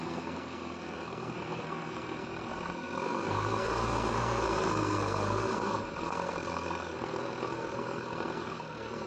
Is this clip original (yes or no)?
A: no